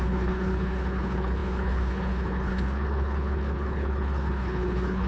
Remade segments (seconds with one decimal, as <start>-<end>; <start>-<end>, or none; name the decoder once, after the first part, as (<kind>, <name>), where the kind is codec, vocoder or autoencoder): 0.0-5.1 (codec, HILCodec)